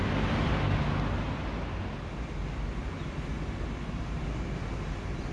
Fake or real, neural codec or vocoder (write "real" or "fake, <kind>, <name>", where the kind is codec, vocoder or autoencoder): real